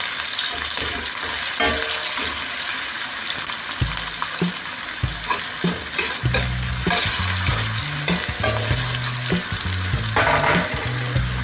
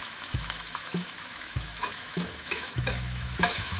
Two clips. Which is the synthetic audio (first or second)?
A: second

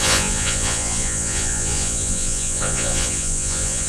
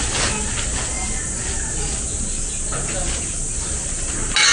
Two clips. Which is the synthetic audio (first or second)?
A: first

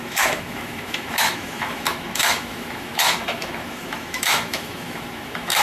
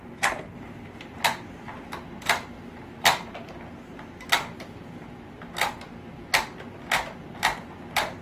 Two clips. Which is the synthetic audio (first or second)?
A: first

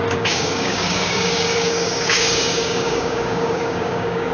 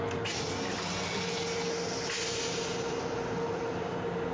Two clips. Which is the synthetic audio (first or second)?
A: first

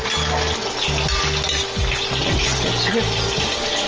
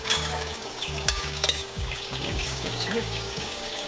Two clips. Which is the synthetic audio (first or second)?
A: second